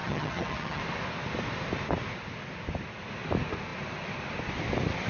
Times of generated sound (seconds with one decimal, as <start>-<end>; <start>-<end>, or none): 0.0-0.8